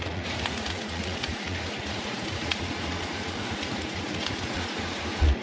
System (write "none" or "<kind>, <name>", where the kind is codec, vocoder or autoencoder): vocoder, Vocos